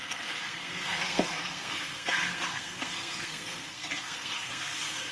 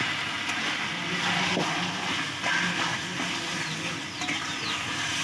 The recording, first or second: second